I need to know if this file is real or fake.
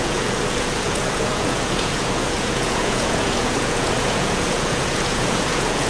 fake